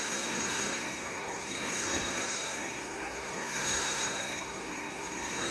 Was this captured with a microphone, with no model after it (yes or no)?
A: no